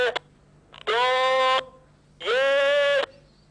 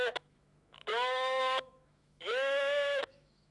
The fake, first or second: second